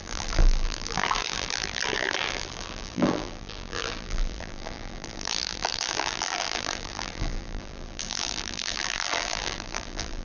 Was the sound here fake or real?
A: fake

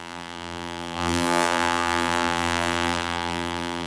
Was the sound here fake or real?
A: fake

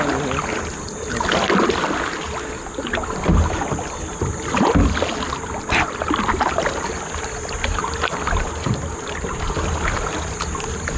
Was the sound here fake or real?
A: real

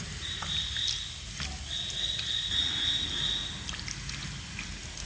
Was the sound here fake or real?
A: real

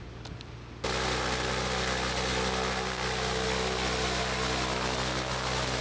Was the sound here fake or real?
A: real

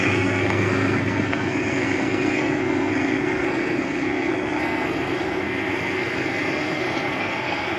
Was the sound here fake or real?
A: fake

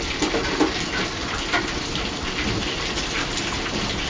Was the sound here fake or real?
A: real